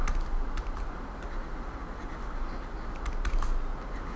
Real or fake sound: real